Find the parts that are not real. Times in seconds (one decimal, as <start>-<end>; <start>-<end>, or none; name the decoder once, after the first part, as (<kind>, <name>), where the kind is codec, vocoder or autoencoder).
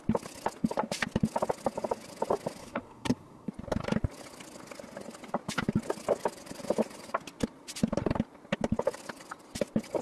2.6-3.5 (codec, SNAC)